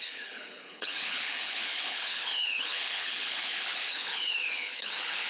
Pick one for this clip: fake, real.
fake